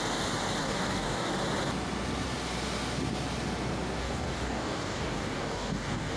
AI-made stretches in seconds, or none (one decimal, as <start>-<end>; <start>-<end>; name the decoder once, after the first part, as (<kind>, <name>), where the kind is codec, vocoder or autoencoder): 0.6-1.3 (codec, DAC); 4.0-6.2